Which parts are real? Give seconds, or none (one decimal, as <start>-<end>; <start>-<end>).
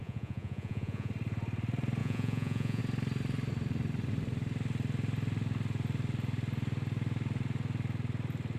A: 1.1-2.0; 2.8-8.6